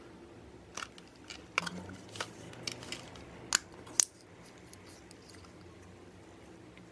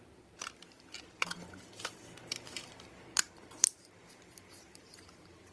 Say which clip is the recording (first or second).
first